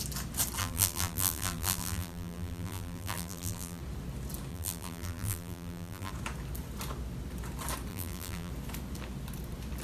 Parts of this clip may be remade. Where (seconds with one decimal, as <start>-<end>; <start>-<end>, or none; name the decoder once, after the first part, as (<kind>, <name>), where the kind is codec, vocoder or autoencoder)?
0.6-3.8 (vocoder, BigVGAN v2); 4.5-6.1; 7.9-8.5